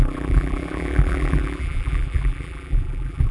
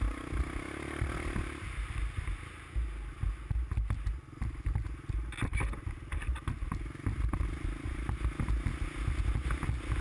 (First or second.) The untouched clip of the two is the second